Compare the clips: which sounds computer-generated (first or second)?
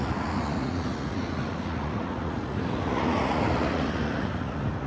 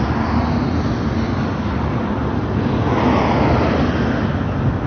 first